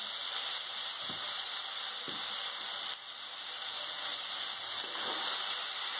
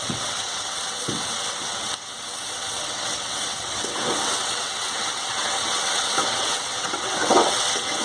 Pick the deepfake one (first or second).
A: second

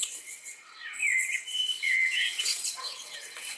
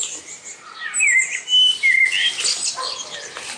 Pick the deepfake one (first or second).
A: first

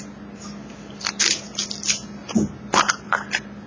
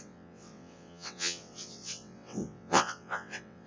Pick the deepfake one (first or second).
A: second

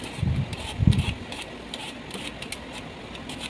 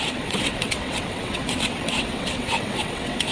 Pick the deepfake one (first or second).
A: second